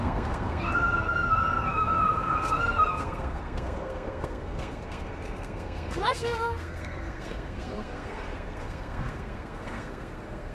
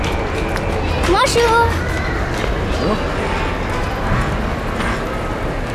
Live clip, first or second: second